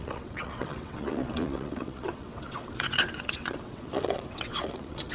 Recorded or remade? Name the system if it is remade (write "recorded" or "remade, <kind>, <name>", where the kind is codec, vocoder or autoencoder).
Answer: remade, vocoder, WaveNeXt